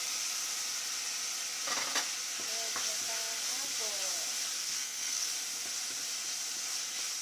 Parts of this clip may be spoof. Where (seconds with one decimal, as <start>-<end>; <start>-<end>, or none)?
4.6-5.3